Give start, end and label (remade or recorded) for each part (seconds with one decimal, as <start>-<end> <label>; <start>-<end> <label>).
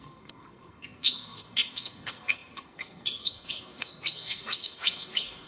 0.0-5.5 remade